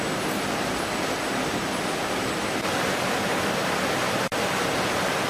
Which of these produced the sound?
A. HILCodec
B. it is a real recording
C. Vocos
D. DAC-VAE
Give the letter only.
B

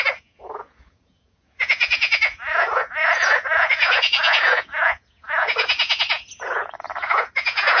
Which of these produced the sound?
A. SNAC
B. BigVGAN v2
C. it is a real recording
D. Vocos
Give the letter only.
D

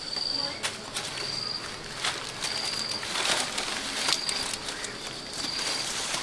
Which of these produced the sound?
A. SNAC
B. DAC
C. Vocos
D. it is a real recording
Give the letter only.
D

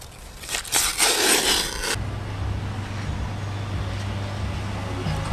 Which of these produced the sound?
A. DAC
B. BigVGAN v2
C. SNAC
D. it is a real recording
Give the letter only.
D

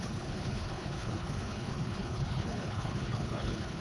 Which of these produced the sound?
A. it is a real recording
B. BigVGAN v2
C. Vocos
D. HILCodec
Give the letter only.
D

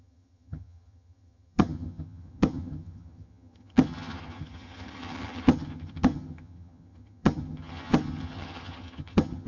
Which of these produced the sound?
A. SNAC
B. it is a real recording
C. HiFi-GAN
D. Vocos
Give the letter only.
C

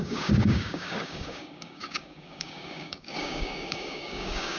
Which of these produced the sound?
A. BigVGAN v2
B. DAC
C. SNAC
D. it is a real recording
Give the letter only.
B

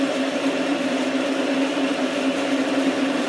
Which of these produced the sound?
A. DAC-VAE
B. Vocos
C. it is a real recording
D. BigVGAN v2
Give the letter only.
D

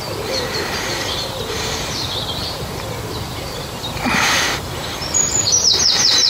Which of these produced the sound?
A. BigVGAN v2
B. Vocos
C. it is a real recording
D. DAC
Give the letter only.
A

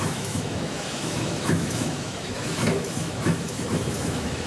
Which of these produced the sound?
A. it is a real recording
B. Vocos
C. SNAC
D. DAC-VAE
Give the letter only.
D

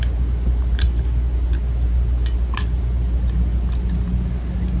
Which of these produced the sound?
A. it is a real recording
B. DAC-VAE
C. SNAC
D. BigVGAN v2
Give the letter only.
A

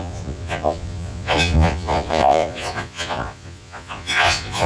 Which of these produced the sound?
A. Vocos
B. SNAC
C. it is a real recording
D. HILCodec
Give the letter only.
A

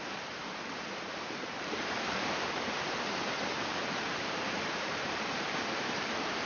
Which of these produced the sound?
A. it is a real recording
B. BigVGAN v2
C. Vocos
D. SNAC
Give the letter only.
B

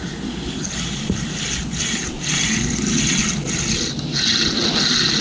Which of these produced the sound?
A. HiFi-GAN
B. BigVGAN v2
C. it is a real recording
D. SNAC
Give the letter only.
C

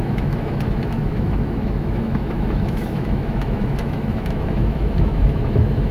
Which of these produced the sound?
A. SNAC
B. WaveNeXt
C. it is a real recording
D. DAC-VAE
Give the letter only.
D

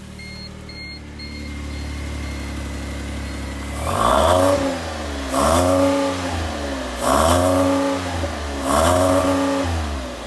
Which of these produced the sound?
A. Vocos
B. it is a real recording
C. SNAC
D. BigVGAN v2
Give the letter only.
B